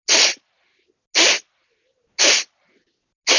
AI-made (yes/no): no